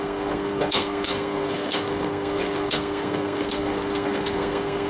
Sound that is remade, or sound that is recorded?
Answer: remade